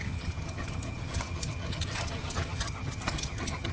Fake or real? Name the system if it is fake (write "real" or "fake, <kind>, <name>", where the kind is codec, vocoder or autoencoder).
fake, vocoder, HiFi-GAN